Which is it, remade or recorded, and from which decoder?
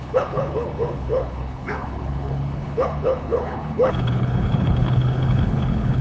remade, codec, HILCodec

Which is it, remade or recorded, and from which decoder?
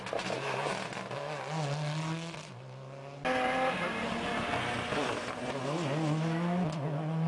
recorded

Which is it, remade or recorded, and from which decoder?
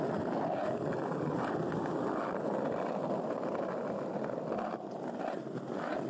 recorded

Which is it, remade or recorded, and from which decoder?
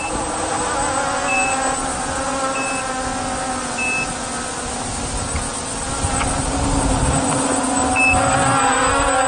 recorded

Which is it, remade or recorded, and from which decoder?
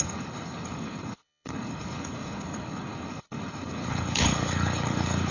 remade, codec, HILCodec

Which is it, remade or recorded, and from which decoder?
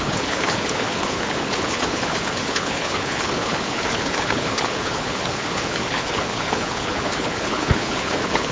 remade, codec, HILCodec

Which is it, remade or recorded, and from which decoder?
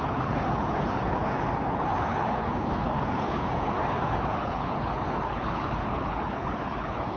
remade, codec, HILCodec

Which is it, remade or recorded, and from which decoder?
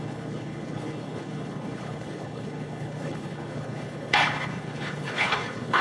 remade, codec, HILCodec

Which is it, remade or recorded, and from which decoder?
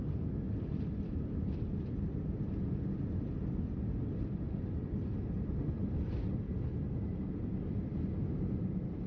recorded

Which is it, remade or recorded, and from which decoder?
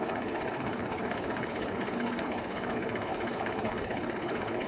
remade, codec, HILCodec